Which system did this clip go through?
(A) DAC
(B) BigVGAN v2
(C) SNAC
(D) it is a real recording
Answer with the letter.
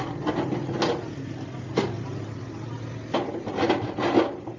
D